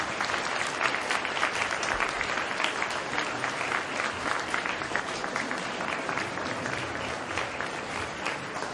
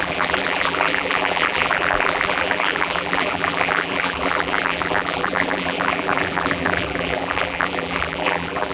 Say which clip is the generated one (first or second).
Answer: second